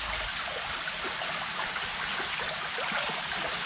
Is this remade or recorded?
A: recorded